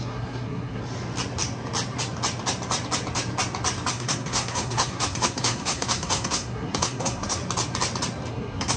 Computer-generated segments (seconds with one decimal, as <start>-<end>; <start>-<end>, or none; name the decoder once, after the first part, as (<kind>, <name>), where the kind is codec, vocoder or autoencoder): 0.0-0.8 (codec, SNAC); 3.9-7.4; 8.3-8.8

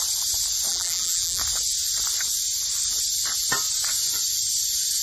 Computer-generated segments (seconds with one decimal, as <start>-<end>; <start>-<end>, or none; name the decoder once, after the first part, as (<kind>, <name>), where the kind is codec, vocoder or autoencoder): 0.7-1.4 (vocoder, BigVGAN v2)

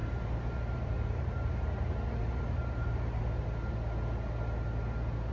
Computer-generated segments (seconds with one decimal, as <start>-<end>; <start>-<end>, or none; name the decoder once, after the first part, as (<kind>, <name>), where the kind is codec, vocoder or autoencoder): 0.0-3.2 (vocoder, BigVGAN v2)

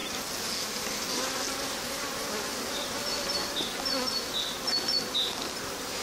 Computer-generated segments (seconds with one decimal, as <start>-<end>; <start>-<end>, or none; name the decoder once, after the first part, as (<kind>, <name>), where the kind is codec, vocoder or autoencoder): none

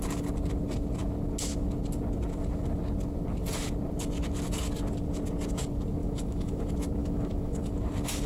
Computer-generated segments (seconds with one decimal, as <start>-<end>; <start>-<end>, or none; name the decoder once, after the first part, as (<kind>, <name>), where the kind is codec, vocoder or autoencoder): 6.0-6.6 (autoencoder, DAC-VAE); 7.0-7.7

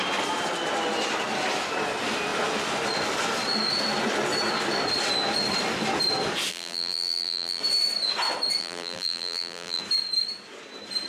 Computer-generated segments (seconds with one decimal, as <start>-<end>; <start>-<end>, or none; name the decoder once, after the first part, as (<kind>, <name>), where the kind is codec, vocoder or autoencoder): 6.5-7.6 (vocoder, BigVGAN v2); 8.6-9.8

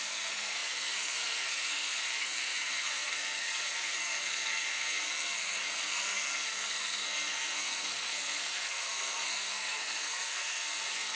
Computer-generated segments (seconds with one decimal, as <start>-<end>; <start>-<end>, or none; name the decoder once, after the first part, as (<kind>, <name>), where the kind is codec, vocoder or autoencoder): 0.0-11.1 (codec, SNAC)